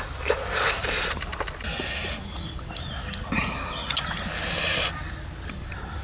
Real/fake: real